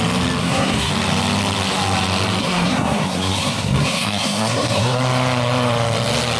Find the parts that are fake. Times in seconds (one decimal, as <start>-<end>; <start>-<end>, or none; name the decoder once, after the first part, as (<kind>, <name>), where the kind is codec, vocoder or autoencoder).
0.4-0.9 (codec, SNAC); 2.4-5.0